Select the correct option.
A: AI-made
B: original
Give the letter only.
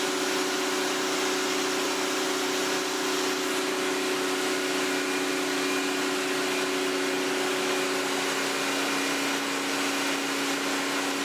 B